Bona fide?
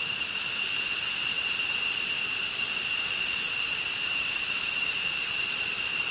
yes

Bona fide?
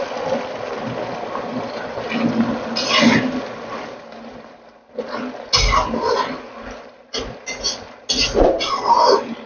yes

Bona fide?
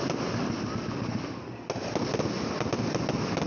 yes